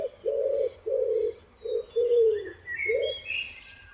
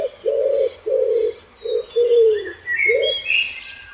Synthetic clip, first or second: first